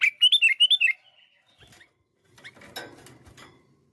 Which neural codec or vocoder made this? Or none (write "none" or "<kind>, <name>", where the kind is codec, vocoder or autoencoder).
none